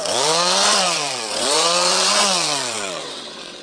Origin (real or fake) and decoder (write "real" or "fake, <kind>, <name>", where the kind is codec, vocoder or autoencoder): fake, vocoder, WaveNeXt